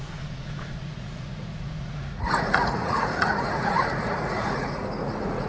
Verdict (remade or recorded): remade